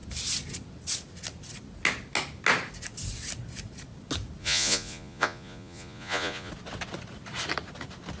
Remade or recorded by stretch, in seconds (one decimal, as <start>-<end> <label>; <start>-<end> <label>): 0.0-4.4 recorded; 4.4-6.5 remade; 6.5-8.2 recorded